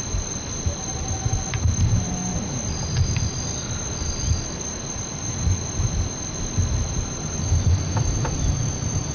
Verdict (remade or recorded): recorded